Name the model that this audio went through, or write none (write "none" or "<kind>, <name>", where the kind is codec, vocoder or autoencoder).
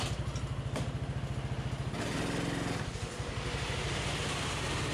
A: none